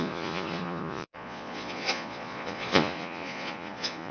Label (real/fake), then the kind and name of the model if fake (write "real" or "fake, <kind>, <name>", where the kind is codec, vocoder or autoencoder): fake, vocoder, Vocos